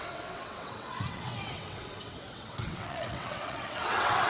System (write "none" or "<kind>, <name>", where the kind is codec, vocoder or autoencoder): vocoder, WaveNeXt